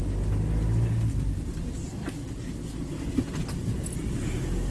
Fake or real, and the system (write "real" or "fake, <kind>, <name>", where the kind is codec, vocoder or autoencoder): real